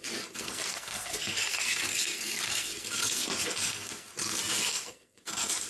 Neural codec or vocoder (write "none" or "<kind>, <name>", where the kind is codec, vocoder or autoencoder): codec, SNAC